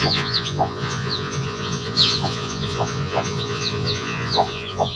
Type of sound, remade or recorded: remade